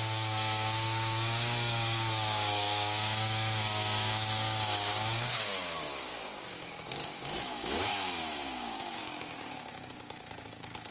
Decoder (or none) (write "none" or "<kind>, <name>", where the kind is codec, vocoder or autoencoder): codec, DAC